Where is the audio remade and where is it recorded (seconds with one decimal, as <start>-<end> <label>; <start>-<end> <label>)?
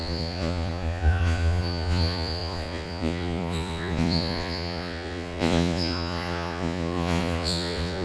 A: 0.0-8.0 remade